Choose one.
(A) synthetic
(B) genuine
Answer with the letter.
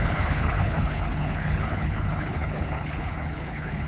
A